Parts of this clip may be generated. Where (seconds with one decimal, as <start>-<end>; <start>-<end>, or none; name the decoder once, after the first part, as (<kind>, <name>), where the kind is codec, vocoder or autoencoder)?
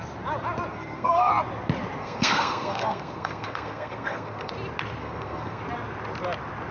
0.7-1.3 (codec, SNAC); 2.0-4.5; 5.0-5.6